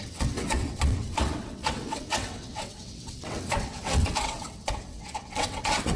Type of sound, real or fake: fake